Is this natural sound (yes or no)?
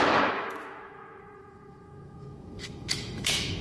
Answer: no